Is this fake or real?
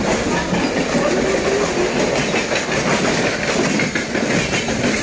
real